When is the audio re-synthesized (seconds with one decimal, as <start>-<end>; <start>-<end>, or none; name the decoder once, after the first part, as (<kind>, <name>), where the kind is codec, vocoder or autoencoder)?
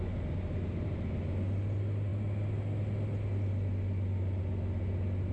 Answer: none